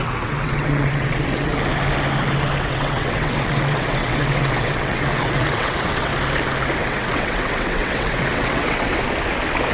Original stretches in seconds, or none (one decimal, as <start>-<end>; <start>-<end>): 1.5-2.6; 6.1-6.8; 8.9-9.7

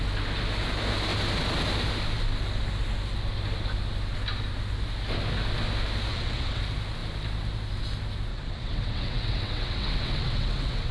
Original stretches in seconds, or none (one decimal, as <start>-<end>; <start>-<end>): 0.0-6.1; 6.6-8.3

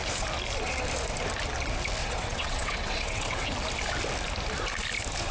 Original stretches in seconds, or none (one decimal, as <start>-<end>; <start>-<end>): 0.0-2.0; 3.5-5.3

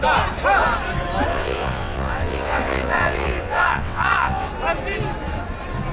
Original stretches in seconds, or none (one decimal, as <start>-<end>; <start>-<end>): 0.0-1.3; 4.5-5.9

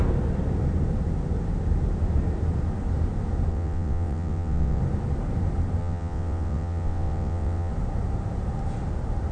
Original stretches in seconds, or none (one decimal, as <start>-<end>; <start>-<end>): 0.0-3.5; 4.8-5.8; 7.7-9.3

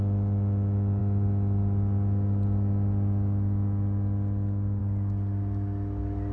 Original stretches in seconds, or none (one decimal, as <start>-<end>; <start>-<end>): 0.0-6.3